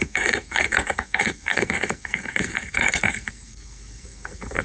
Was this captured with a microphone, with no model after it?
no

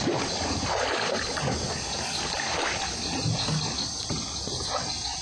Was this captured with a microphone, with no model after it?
yes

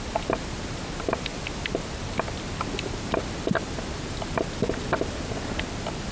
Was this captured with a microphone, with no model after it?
yes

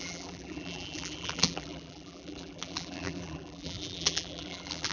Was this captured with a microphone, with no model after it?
no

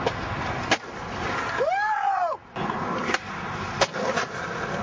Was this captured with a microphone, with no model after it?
yes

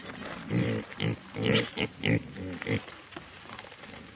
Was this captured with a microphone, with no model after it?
yes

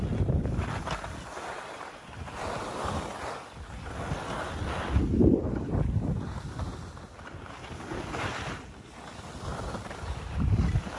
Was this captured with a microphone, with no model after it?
yes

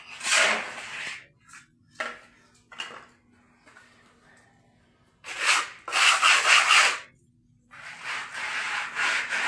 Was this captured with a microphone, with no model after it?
yes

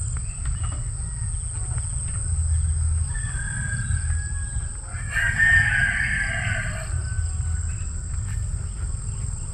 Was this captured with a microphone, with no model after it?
yes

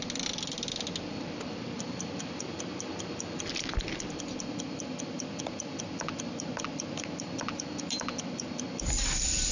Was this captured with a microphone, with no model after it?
yes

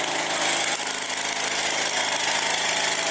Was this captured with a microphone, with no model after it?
yes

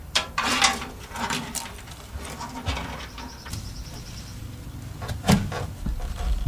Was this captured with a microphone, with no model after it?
no